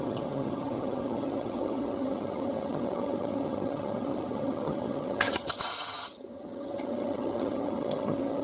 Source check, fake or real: fake